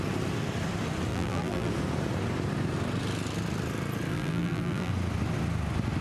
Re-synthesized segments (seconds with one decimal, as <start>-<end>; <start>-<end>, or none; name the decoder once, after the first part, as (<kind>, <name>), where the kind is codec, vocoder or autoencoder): 1.1-1.7 (vocoder, BigVGAN v2); 4.1-4.9